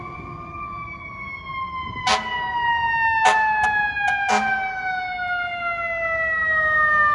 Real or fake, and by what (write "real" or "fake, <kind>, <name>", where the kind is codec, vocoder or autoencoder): real